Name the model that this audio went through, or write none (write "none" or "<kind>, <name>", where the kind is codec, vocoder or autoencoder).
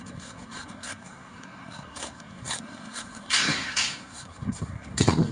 codec, SNAC